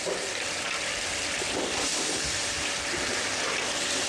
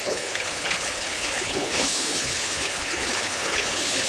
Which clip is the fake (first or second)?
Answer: second